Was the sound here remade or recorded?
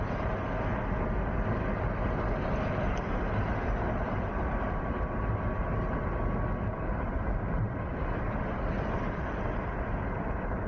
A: recorded